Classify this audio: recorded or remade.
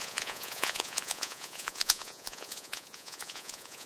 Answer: remade